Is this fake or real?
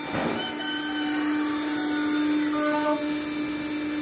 real